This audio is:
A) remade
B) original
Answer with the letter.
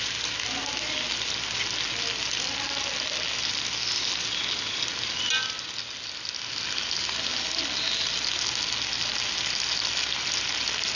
B